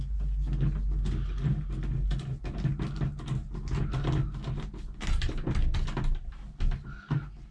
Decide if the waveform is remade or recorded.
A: recorded